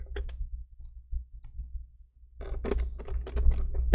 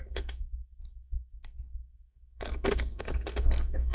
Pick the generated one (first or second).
second